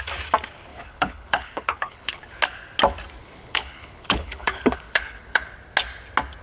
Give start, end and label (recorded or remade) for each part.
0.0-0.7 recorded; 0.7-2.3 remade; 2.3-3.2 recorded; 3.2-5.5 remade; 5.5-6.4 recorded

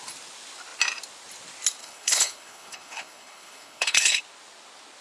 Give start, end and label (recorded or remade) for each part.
0.0-1.8 recorded; 1.8-4.2 remade; 4.2-5.0 recorded